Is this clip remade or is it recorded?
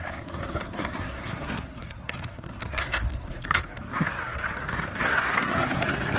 remade